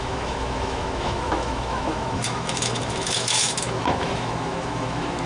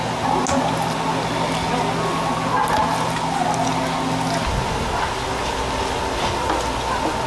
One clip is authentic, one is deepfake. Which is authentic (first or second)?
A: second